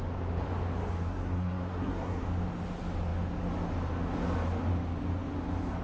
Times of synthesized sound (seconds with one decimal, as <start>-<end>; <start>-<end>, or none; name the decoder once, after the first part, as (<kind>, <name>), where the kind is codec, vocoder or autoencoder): 1.0-2.2 (codec, SNAC)